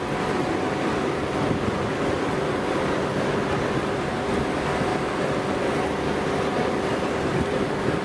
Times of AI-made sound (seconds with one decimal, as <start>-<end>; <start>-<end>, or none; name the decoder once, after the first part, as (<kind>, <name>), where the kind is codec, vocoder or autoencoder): none